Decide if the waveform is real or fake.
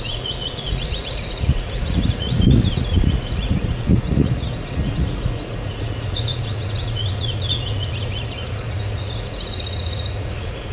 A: fake